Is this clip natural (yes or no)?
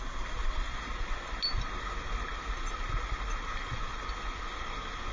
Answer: yes